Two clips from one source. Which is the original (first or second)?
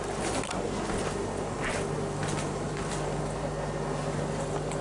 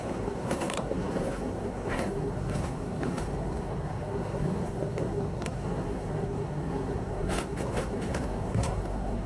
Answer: first